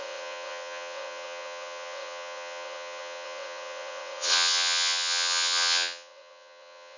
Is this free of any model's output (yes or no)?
no